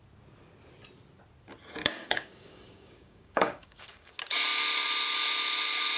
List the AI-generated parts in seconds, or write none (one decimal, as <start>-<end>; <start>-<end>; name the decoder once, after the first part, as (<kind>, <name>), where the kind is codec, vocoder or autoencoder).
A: 1.8-4.1 (codec, DAC)